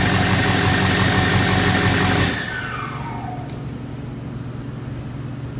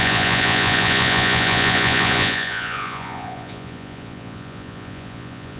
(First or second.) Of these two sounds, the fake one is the second